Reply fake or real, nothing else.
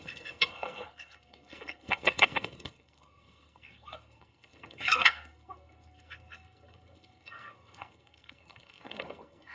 fake